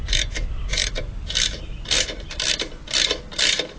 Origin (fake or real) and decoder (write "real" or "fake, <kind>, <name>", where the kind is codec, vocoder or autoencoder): real